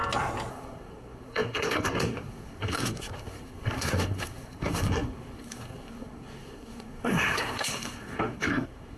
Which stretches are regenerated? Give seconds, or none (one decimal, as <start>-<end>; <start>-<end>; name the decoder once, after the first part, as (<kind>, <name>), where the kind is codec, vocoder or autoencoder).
0.5-9.0 (codec, SNAC)